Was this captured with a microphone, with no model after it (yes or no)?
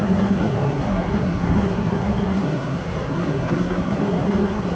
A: no